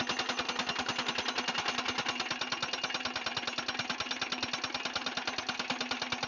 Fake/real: real